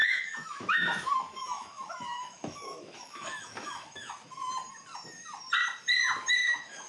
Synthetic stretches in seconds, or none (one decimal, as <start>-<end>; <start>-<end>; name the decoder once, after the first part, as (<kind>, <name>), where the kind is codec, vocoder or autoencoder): 0.0-4.1 (autoencoder, DAC-VAE); 6.4-6.9